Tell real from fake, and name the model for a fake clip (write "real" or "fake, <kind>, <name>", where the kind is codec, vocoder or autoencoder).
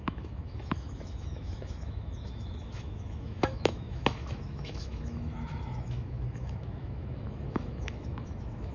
fake, autoencoder, DAC-VAE